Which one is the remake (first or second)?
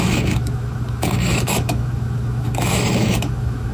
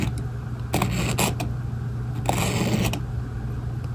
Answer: first